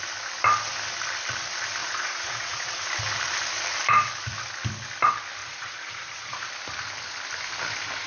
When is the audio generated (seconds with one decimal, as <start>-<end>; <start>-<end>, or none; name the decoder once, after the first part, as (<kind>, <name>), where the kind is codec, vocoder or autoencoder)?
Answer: 1.8-2.9 (vocoder, Vocos); 5.4-6.5